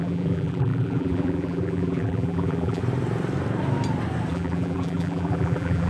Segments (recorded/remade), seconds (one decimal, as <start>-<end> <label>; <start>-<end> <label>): 0.0-2.8 remade; 2.8-4.3 recorded; 4.3-5.9 remade